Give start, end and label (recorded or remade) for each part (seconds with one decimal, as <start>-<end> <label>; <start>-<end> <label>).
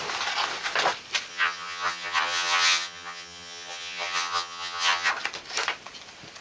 0.0-1.3 recorded; 1.3-5.1 remade; 5.1-6.4 recorded